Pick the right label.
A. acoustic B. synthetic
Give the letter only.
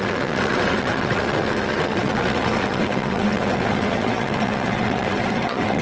B